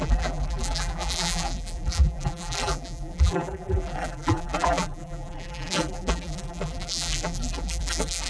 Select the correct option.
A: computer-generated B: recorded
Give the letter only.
A